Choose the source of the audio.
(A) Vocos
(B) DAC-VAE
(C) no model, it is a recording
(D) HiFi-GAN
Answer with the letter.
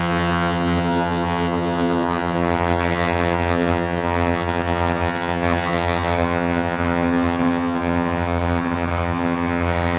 D